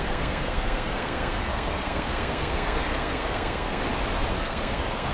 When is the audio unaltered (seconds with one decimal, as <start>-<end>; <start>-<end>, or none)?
3.8-4.3